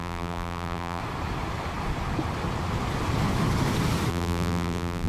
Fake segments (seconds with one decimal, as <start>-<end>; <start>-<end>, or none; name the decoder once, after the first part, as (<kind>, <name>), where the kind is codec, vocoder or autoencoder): 0.0-1.0 (vocoder, BigVGAN v2); 4.1-5.1